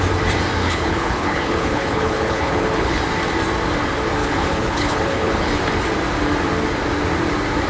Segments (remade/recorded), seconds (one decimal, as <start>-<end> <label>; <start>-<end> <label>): 0.0-0.6 recorded; 0.6-3.0 remade; 3.0-4.2 recorded; 4.2-5.5 remade; 5.5-7.7 recorded